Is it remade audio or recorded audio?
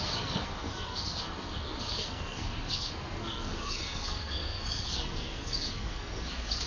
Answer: remade